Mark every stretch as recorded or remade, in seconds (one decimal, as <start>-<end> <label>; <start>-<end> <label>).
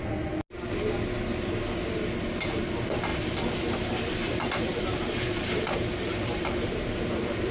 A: 0.0-2.3 recorded; 2.3-7.5 remade